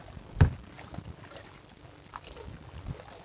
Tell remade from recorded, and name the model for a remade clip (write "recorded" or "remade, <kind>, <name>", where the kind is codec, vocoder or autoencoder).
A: recorded